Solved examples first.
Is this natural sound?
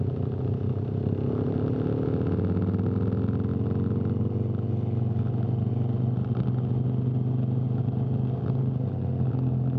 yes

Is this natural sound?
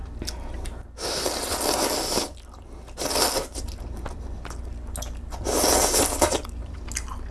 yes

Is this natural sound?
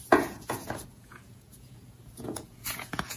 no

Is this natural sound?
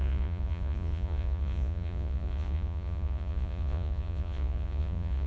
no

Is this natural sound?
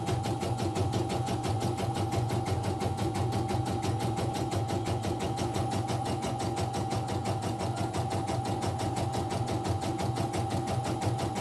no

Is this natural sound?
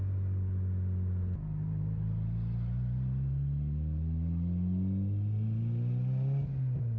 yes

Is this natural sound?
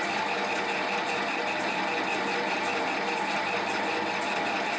yes